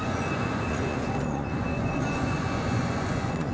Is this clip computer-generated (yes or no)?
yes